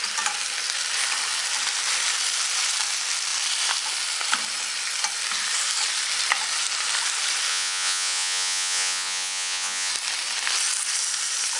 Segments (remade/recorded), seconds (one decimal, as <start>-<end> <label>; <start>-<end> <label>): 0.0-7.5 recorded; 7.5-9.9 remade; 9.9-11.6 recorded